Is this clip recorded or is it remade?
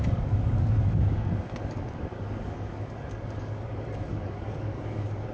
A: remade